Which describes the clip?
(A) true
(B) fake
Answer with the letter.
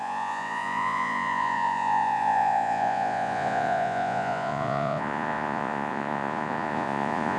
B